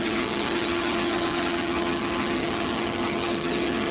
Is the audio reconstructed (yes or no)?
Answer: yes